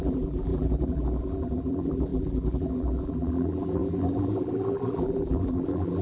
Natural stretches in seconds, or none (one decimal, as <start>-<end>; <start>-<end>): none